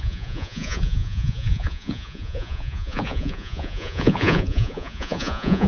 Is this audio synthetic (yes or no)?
yes